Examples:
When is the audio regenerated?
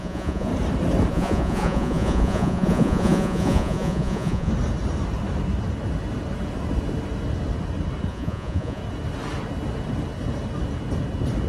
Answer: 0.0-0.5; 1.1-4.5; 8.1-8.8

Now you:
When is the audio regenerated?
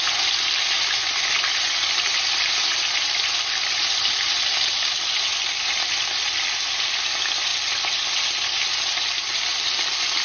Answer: none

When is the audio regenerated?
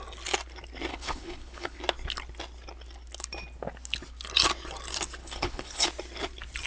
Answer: 0.9-1.8; 5.2-5.9